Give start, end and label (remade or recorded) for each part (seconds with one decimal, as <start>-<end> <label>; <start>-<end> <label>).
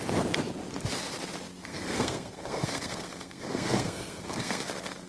0.0-1.6 recorded; 1.6-5.1 remade